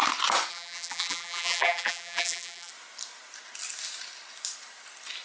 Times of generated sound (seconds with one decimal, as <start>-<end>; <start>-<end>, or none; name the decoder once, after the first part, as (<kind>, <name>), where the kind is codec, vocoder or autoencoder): 0.5-2.7 (vocoder, BigVGAN v2)